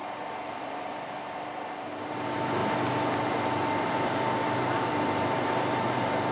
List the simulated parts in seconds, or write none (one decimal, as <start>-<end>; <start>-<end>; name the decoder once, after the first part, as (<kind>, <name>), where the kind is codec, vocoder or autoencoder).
none